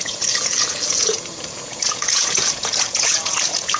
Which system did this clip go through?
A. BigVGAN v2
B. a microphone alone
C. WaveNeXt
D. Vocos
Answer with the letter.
D